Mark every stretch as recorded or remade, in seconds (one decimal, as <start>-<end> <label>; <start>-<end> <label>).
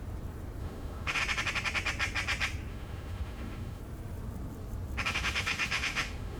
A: 0.0-0.6 recorded; 0.6-1.2 remade; 1.2-2.7 recorded; 2.7-3.8 remade; 3.8-5.1 recorded; 5.1-6.4 remade